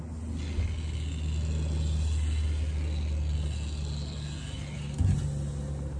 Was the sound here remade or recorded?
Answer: recorded